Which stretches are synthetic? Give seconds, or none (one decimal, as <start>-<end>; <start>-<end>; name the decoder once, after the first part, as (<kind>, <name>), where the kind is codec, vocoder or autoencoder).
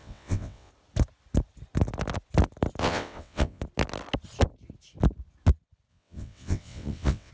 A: 0.0-0.7 (vocoder, WaveNeXt); 2.8-3.6; 5.9-7.3